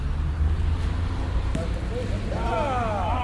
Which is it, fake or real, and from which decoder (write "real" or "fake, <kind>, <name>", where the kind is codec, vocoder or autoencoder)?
real